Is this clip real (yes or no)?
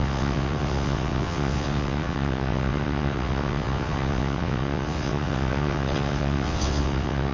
no